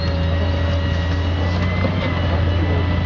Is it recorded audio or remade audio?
recorded